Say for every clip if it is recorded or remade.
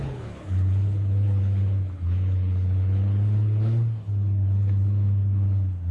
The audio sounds remade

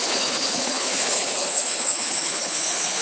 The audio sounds remade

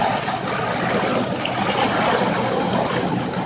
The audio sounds recorded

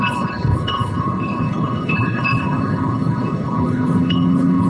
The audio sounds remade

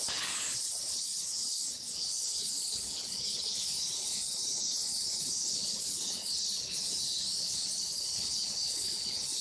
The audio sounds remade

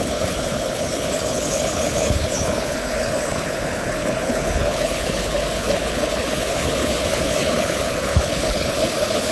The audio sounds remade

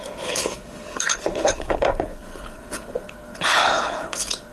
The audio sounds remade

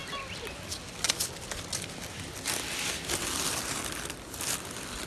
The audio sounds recorded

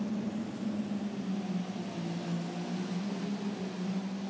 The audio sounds recorded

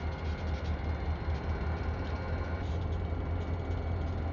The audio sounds recorded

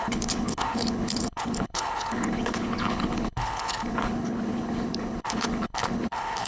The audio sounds remade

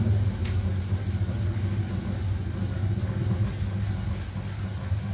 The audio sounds recorded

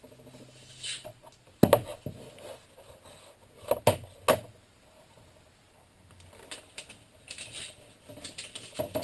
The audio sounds recorded